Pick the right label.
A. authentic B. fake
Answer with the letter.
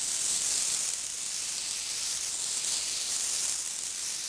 A